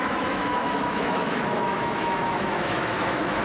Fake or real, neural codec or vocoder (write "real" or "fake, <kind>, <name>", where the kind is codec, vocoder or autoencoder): fake, autoencoder, DAC-VAE